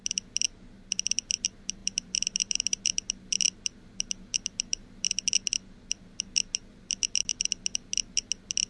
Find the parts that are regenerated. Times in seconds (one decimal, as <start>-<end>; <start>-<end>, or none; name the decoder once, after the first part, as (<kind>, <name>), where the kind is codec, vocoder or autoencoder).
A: 1.8-2.8 (vocoder, BigVGAN v2); 4.7-5.2